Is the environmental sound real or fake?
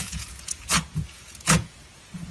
fake